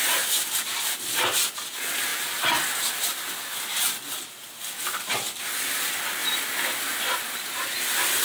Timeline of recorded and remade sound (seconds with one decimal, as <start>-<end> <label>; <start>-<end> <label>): 0.0-8.2 recorded